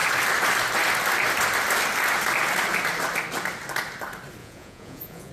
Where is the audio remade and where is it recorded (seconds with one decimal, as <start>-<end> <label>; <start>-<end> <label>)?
0.0-4.4 recorded; 4.4-5.3 remade